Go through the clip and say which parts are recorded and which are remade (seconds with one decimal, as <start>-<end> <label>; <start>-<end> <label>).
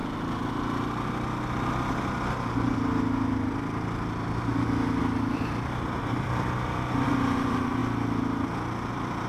0.0-5.0 recorded; 5.0-7.8 remade; 7.8-8.9 recorded; 8.9-9.3 remade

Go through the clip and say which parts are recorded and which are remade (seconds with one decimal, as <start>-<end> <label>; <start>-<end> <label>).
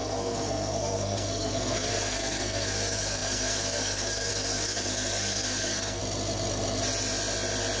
0.0-6.0 remade; 6.0-7.8 recorded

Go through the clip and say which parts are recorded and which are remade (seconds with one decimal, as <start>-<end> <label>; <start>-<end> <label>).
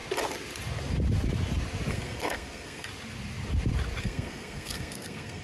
0.0-1.9 recorded; 1.9-2.9 remade; 2.9-4.0 recorded; 4.0-5.4 remade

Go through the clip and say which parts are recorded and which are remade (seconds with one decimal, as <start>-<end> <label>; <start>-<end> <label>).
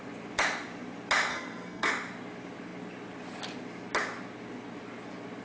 0.0-1.3 recorded; 1.3-1.9 remade; 1.9-5.4 recorded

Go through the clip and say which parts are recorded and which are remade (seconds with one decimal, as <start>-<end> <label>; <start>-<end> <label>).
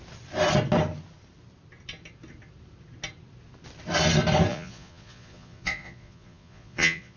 0.0-4.5 recorded; 4.5-7.2 remade